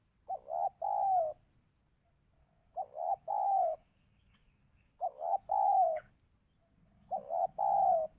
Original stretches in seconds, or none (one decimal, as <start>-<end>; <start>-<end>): 0.0-2.4; 6.1-6.8; 7.6-8.2